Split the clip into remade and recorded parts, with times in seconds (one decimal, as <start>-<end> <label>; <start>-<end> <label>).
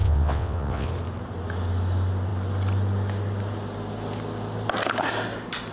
0.0-0.9 remade; 0.9-5.7 recorded